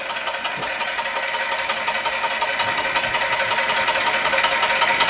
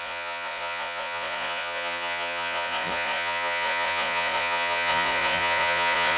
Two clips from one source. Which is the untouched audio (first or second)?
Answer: first